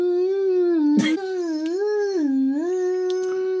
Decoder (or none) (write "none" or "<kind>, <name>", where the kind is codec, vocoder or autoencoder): autoencoder, DAC-VAE